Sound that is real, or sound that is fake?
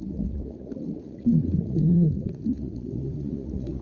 fake